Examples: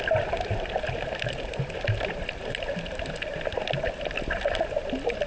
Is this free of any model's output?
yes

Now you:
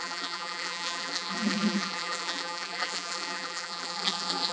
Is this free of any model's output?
no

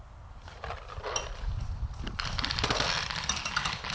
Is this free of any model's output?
yes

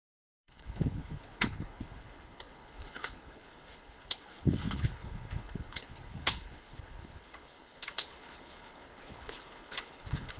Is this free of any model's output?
no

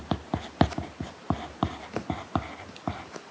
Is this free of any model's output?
yes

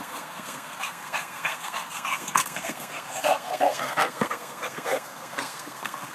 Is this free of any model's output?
no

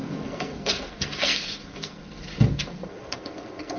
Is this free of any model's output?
no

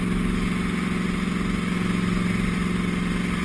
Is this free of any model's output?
yes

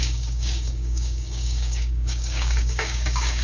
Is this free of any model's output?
no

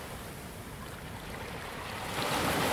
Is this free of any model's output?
yes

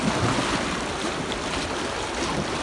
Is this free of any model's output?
yes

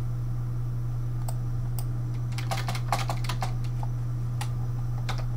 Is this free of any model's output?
yes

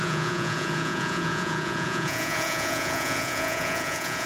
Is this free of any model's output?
no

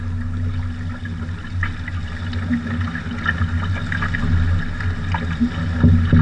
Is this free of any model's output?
yes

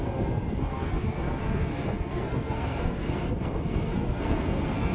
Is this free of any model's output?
no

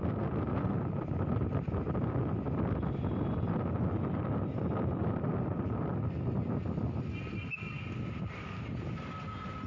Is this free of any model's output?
yes